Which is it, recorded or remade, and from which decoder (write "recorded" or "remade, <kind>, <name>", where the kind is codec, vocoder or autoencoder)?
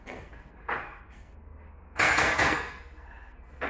remade, codec, SNAC